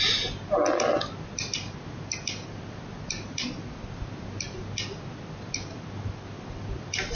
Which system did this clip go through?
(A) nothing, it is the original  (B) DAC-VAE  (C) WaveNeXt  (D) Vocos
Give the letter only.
A